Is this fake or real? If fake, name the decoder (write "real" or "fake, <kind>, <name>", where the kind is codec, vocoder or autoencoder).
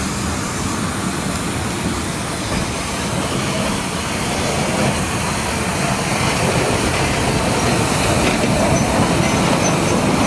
real